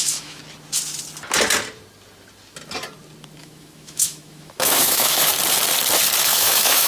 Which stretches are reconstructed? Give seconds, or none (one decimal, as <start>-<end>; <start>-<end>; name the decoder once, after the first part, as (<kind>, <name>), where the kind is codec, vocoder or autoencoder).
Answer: 0.0-0.4 (autoencoder, DAC-VAE); 3.4-5.3; 6.2-6.9